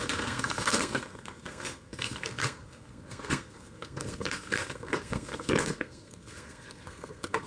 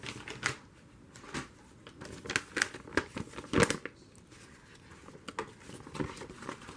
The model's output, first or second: first